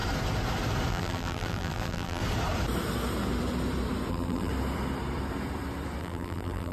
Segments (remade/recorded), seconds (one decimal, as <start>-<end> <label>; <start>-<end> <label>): 0.0-0.9 recorded; 0.9-2.2 remade; 2.2-4.1 recorded; 4.1-4.5 remade; 4.5-6.0 recorded; 6.0-6.7 remade